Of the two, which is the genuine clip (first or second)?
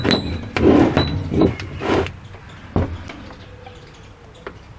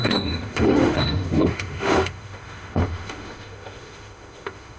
first